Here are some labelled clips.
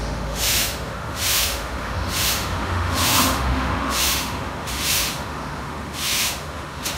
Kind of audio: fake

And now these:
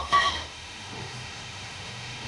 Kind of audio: fake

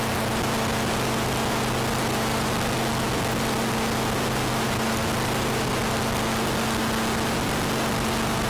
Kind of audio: real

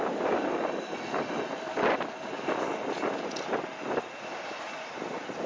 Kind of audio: real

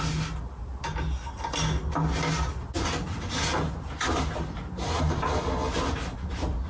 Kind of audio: real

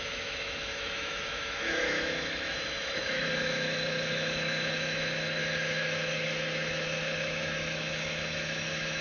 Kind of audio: fake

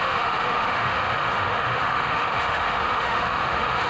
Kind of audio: fake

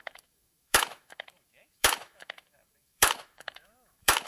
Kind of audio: fake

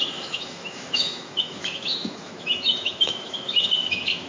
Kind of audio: fake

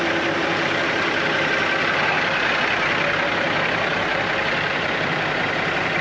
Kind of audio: real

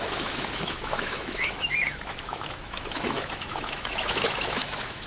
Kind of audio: fake